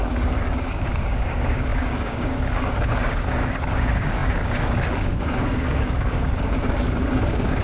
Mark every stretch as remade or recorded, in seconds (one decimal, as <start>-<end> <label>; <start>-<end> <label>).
0.0-7.6 remade